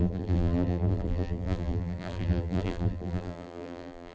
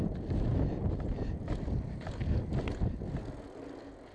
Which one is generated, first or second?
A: first